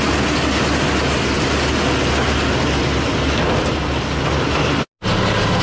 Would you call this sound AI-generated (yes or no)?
no